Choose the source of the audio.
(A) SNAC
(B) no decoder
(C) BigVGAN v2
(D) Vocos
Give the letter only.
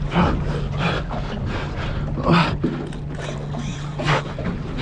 B